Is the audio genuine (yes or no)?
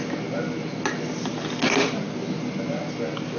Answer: yes